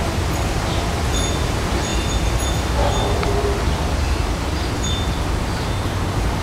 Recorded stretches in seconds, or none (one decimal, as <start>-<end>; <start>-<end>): 0.0-6.4